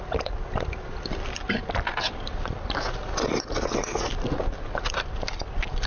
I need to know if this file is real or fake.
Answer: real